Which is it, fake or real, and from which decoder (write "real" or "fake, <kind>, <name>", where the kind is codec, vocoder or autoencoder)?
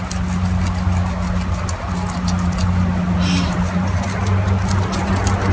real